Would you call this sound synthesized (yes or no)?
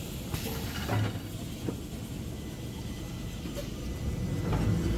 no